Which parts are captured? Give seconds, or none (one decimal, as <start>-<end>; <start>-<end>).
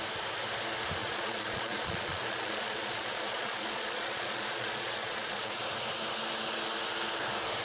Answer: 0.0-1.0; 5.6-7.6